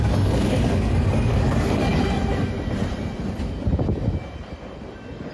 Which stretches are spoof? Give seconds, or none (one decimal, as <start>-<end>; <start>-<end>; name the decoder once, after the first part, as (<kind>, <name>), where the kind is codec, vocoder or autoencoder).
0.0-1.9 (codec, DAC)